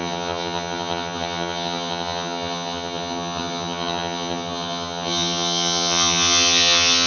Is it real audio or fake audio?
fake